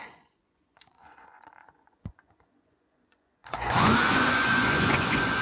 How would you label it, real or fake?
fake